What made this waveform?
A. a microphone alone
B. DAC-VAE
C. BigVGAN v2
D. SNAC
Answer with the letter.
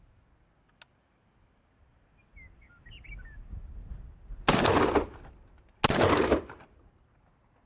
A